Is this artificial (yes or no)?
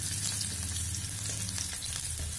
no